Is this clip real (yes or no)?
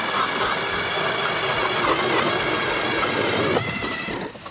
yes